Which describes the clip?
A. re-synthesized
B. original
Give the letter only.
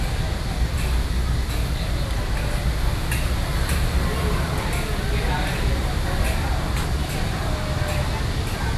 B